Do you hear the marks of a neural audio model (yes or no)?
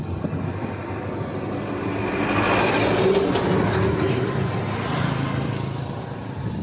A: no